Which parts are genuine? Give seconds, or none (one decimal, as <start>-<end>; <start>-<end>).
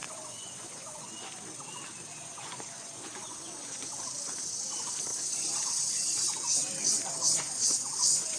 1.3-2.1; 3.9-7.1